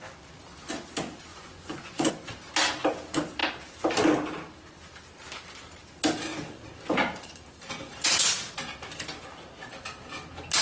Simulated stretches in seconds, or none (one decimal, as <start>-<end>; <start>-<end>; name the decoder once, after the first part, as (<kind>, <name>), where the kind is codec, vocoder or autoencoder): 1.3-2.1 (vocoder, Vocos)